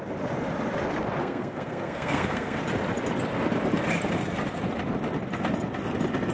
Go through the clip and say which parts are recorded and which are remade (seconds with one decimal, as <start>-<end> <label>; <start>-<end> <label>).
0.0-1.2 recorded; 1.2-2.6 remade; 2.6-6.3 recorded